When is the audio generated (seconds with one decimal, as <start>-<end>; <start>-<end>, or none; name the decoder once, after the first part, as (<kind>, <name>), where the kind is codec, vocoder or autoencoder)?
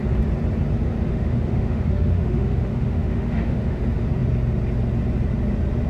1.1-3.8 (autoencoder, DAC-VAE)